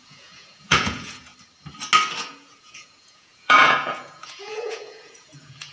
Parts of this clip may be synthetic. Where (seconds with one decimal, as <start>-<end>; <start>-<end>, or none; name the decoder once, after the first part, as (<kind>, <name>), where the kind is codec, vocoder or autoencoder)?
0.0-1.3 (vocoder, Vocos); 2.2-5.7